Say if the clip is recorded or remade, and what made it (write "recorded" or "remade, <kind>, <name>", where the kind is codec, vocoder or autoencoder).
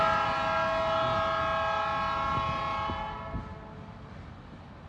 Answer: recorded